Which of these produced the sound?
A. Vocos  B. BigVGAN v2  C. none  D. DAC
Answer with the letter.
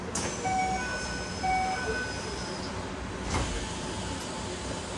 C